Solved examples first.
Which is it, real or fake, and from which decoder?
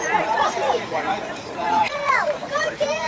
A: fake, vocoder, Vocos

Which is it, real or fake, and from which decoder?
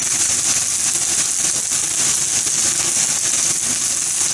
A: real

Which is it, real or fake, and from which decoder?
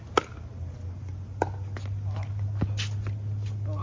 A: real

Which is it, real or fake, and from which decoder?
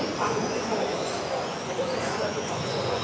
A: fake, vocoder, Vocos